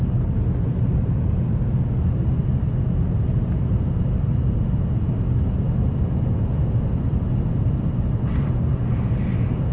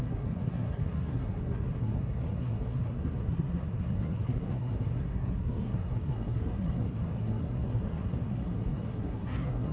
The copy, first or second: second